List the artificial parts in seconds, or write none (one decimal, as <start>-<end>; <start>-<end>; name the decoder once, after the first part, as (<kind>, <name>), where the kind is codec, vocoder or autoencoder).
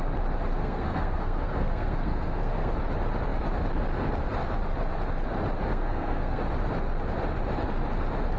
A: 0.6-2.7 (codec, SNAC); 5.7-6.4